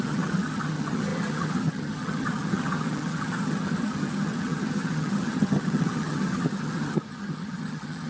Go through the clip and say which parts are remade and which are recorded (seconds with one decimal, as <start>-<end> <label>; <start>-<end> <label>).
0.0-8.1 remade